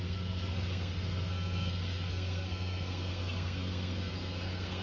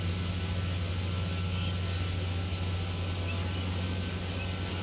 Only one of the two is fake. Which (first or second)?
first